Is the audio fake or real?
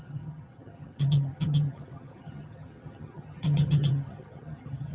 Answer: fake